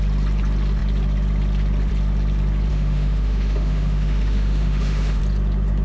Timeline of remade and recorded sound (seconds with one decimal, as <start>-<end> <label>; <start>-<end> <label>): 0.0-2.7 recorded; 2.7-5.2 remade; 5.2-5.8 recorded